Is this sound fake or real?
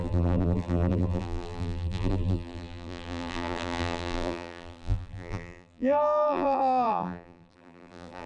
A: fake